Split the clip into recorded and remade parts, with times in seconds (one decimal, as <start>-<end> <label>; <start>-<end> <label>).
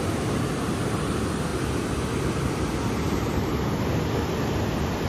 0.0-5.1 recorded